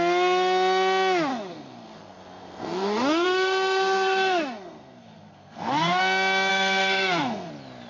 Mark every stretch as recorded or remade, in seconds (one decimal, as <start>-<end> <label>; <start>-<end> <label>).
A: 0.0-1.3 recorded; 1.3-6.0 remade; 6.0-6.5 recorded; 6.5-7.5 remade; 7.5-7.9 recorded